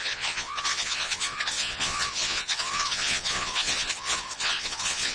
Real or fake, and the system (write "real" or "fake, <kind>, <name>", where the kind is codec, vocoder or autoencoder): fake, vocoder, Vocos